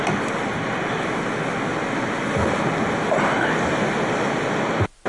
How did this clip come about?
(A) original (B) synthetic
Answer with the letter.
A